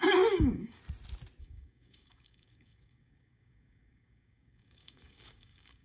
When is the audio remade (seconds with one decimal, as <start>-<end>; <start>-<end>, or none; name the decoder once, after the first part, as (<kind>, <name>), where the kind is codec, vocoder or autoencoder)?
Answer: 0.0-0.8 (codec, DAC); 1.4-5.8